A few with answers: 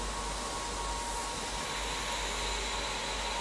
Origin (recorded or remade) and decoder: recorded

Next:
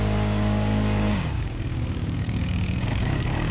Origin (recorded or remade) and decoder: remade, codec, DAC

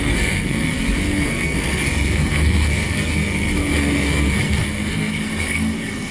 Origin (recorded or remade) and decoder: remade, codec, SNAC